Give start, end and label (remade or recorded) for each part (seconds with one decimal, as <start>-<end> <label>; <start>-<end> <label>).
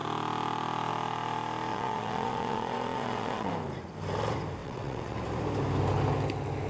0.0-1.7 recorded; 1.7-3.5 remade; 3.5-4.6 recorded; 4.6-5.2 remade; 5.2-6.7 recorded